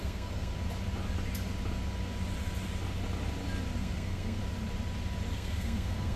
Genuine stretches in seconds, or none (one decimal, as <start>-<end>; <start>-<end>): 0.5-3.8; 4.4-5.3